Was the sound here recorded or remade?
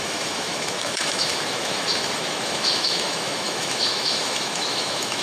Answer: remade